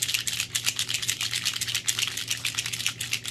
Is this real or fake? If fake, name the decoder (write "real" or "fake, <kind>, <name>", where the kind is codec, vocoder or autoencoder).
real